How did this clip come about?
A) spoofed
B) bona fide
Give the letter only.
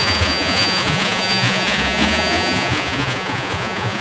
A